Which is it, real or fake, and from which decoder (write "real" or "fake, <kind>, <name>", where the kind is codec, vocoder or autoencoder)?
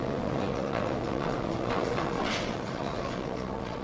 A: fake, vocoder, WaveNeXt